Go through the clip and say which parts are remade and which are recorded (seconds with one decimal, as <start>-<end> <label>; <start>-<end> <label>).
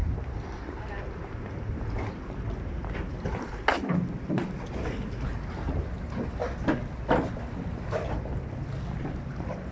0.0-9.7 recorded